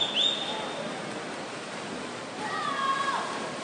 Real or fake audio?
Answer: real